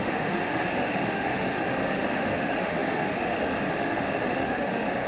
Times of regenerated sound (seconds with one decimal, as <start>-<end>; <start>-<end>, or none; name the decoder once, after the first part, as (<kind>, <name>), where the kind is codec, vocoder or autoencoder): 0.0-5.1 (autoencoder, DAC-VAE)